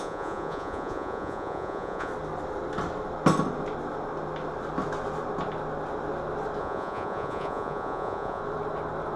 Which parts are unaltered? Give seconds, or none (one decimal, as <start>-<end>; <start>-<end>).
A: 2.1-6.6; 8.4-9.2